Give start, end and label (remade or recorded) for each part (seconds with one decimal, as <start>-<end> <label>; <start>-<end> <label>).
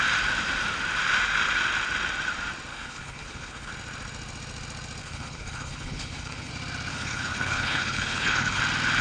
0.0-2.7 recorded; 2.7-3.7 remade; 3.7-5.0 recorded; 5.0-6.5 remade; 6.5-6.9 recorded; 6.9-8.6 remade; 8.6-9.0 recorded